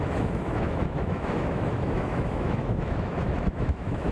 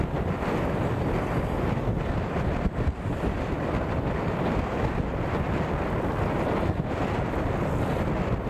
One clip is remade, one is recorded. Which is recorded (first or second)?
second